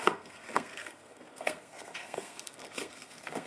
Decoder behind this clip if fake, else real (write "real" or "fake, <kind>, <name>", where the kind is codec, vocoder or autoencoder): fake, codec, SNAC